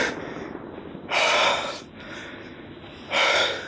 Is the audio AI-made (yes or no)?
no